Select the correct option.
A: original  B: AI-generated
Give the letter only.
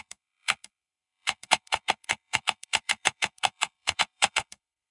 B